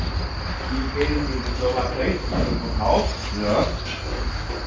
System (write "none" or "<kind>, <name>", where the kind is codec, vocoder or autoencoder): none